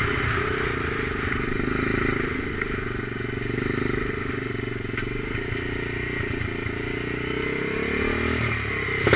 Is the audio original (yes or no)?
yes